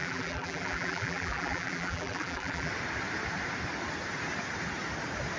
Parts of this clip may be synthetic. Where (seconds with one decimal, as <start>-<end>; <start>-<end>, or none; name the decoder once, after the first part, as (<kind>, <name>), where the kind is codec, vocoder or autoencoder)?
0.0-2.7 (vocoder, BigVGAN v2)